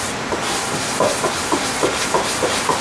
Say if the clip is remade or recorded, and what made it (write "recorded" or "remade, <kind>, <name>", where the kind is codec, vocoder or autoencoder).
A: recorded